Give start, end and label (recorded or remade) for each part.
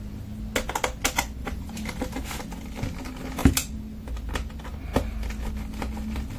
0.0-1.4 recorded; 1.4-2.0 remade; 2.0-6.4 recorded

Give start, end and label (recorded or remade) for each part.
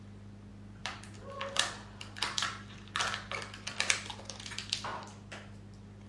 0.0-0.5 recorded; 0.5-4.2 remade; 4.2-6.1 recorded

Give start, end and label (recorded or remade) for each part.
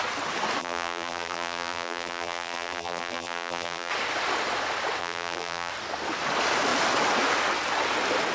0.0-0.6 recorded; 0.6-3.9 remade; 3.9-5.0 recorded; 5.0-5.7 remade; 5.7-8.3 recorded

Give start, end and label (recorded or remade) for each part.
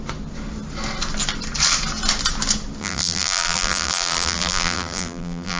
0.0-2.8 recorded; 2.8-5.6 remade